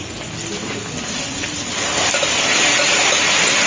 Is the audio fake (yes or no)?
no